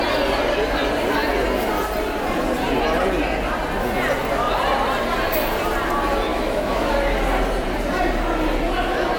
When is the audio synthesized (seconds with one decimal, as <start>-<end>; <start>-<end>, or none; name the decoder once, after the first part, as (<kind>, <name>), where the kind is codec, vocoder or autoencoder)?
6.3-6.9 (autoencoder, DAC-VAE)